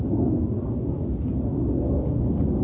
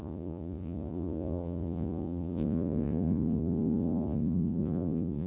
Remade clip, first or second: second